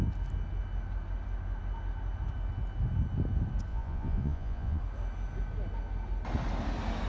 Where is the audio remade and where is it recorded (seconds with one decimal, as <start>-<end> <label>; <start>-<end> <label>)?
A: 0.0-3.7 recorded; 3.7-4.8 remade; 4.8-7.1 recorded